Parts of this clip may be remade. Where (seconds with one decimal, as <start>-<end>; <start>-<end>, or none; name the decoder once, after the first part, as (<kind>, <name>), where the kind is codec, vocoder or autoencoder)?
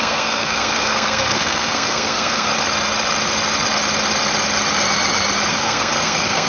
0.0-2.5 (codec, SNAC); 5.5-6.5